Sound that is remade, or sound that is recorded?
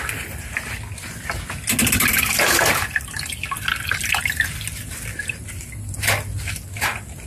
recorded